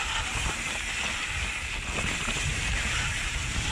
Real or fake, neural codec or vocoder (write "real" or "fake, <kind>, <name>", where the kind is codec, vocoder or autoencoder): real